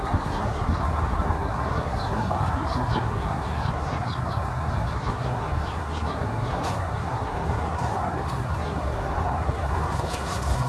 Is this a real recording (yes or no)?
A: no